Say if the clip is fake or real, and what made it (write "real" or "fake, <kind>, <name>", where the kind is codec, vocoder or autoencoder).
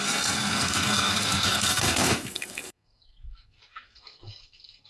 fake, codec, SNAC